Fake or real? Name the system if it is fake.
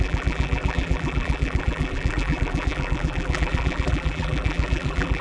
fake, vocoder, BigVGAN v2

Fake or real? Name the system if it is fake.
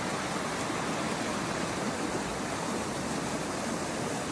real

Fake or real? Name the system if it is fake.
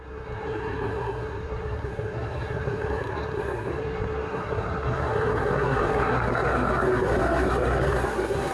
fake, codec, SNAC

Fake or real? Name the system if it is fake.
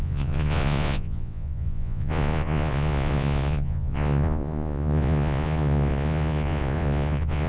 fake, vocoder, Vocos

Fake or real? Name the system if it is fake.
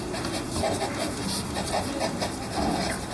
real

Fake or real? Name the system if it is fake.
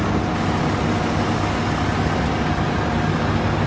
real